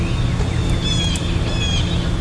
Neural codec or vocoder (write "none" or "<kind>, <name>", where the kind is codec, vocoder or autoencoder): none